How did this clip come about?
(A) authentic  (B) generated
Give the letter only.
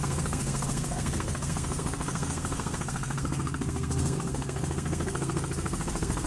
B